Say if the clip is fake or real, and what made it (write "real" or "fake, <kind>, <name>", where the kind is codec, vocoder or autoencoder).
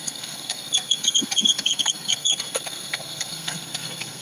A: fake, codec, SNAC